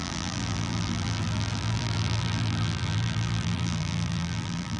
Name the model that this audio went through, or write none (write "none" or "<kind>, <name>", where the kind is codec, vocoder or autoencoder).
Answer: vocoder, BigVGAN v2